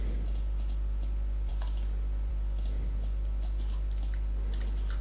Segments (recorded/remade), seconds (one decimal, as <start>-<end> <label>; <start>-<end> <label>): 0.0-5.0 recorded